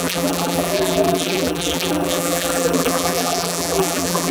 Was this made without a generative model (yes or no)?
no